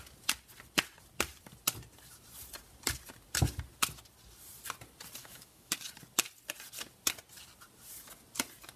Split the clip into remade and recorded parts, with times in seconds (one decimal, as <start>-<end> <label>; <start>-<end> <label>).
0.0-5.2 recorded; 5.2-5.7 remade; 5.7-8.8 recorded